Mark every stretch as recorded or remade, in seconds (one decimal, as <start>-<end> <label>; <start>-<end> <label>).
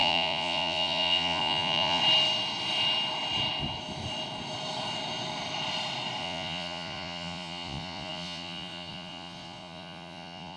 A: 0.0-2.0 remade; 2.0-6.2 recorded; 6.2-10.6 remade